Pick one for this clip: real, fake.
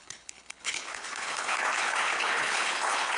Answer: fake